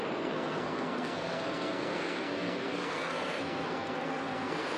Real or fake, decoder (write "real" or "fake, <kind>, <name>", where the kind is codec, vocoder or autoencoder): fake, codec, SNAC